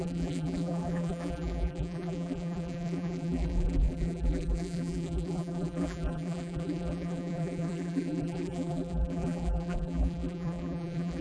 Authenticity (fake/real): fake